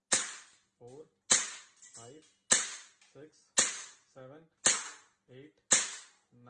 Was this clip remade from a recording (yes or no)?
no